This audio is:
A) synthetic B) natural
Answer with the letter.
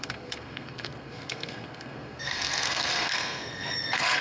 A